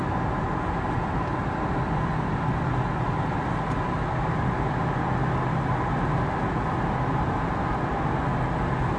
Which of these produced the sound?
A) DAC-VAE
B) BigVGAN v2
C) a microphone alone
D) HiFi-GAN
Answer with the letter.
C